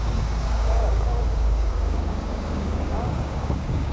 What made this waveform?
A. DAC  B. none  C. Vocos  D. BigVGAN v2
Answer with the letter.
A